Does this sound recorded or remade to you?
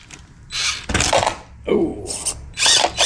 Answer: recorded